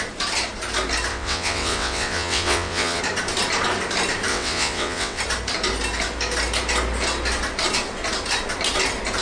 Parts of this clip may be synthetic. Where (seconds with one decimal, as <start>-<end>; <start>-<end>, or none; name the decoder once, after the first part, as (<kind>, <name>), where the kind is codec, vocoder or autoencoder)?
1.1-3.0 (vocoder, WaveNeXt); 4.3-5.2